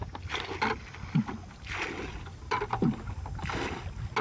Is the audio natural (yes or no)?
yes